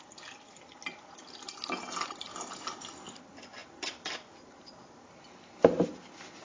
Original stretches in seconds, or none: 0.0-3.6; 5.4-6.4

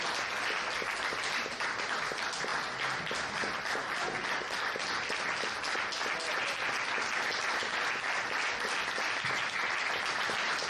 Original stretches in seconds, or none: 0.0-10.7

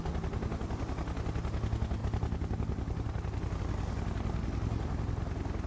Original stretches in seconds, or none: 0.0-5.7

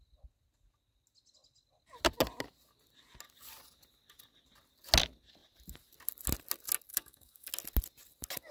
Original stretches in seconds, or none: 0.0-6.9; 7.5-8.5

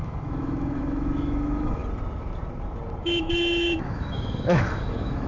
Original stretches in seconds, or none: 1.8-3.0

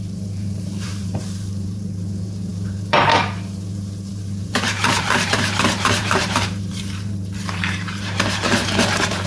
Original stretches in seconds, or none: none

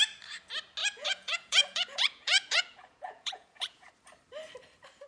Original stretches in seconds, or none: 0.0-0.8; 3.9-5.1

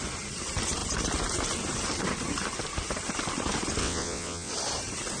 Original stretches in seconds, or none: 0.0-3.8; 4.5-5.2